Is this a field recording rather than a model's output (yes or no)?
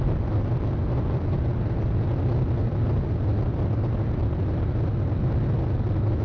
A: yes